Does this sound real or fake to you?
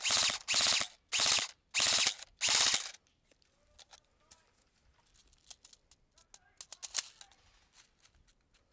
real